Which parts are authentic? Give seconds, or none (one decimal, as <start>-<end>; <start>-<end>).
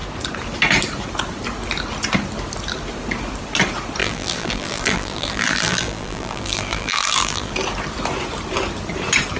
0.0-4.0; 7.5-9.4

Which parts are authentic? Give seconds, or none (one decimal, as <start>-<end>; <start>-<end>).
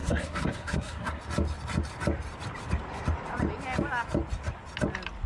1.2-5.3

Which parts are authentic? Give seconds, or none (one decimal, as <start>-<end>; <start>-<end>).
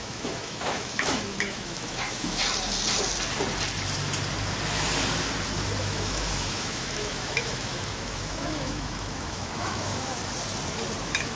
2.4-5.8; 10.2-11.0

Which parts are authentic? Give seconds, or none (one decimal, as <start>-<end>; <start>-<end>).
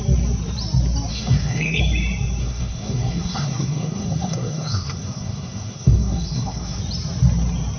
0.0-1.1; 1.8-2.4; 6.8-7.8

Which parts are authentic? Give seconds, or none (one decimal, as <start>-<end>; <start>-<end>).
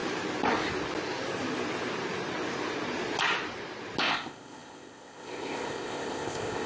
0.0-4.0